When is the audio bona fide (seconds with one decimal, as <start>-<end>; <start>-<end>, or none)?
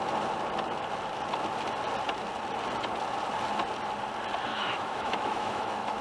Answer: 0.0-4.5